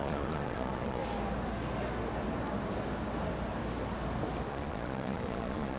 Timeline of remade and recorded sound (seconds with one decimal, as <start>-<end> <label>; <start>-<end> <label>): 0.0-1.0 remade; 1.0-4.5 recorded; 4.5-5.8 remade

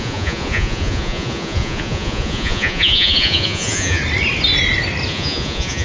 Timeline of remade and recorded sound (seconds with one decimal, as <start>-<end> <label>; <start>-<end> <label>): 0.0-4.0 remade; 4.0-5.1 recorded; 5.1-5.8 remade

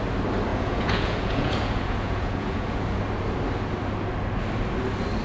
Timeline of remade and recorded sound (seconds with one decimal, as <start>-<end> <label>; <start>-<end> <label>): 0.0-0.5 recorded; 0.5-3.0 remade; 3.0-5.2 recorded